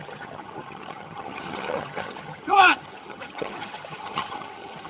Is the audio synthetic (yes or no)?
yes